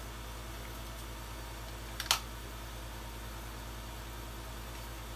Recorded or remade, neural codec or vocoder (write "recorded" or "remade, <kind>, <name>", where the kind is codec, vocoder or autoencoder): recorded